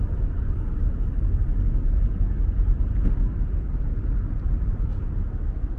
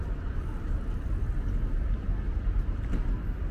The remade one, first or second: second